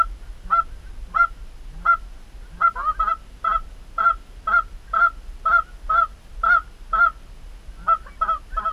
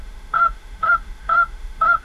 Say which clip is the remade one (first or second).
second